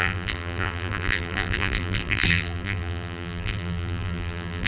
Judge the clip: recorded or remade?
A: remade